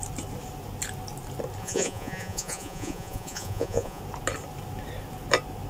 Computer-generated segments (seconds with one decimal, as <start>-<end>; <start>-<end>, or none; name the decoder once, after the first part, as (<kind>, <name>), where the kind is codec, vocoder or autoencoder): 1.6-4.0 (vocoder, Vocos)